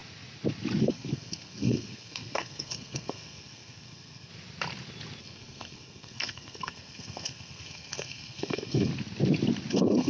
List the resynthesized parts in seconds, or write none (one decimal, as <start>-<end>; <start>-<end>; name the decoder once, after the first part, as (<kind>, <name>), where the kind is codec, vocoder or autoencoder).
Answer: 0.8-4.3 (codec, SNAC); 5.2-8.9; 9.7-10.1

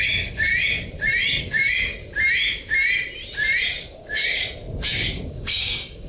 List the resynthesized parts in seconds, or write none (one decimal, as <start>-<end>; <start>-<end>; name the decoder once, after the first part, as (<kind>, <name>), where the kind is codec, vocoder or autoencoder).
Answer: 0.0-0.5 (codec, DAC); 1.4-1.9; 3.8-4.4; 4.9-6.1

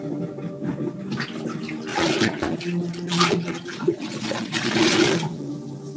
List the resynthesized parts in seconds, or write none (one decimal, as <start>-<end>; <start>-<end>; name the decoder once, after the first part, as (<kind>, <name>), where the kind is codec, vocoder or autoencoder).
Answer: 1.9-5.5 (vocoder, Vocos)

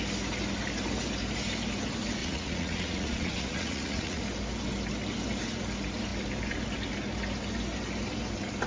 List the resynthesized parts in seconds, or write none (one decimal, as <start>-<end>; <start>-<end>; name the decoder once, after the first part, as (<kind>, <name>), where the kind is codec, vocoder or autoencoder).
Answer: 2.2-4.2 (vocoder, Vocos)

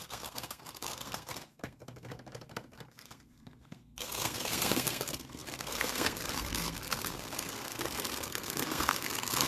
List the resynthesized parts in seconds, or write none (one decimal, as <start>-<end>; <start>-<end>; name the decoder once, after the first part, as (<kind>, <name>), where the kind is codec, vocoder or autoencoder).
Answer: 0.0-9.5 (codec, SNAC)

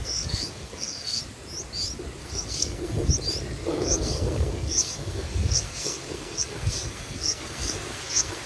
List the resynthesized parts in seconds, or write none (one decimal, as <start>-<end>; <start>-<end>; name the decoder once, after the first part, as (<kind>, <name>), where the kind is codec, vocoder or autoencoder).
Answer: 0.0-1.2 (codec, SNAC); 2.2-3.1; 3.7-8.5